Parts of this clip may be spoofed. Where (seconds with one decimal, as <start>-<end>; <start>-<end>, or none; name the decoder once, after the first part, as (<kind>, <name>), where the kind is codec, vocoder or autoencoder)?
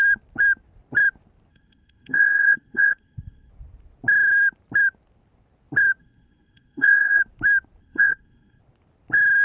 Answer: 1.5-3.5 (codec, SNAC); 6.0-7.2; 7.8-8.6